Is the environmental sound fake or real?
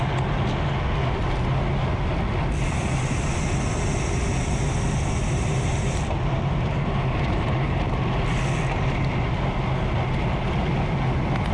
real